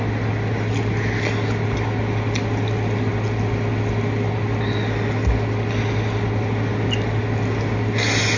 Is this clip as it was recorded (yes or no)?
yes